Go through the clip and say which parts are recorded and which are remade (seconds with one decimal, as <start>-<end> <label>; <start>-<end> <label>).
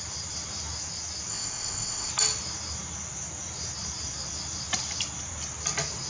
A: 0.0-1.3 recorded; 1.3-2.1 remade; 2.1-6.1 recorded